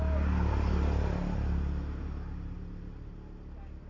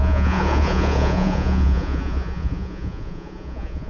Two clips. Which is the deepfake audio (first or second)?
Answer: second